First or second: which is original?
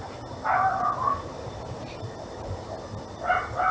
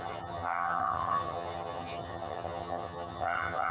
first